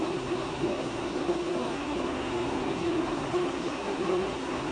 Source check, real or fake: fake